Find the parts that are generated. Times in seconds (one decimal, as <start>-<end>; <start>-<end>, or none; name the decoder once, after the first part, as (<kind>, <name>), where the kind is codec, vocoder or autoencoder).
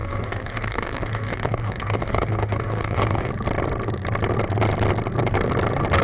0.0-3.3 (autoencoder, DAC-VAE)